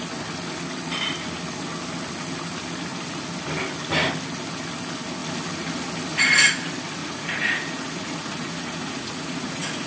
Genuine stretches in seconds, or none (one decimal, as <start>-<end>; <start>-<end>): 0.0-7.0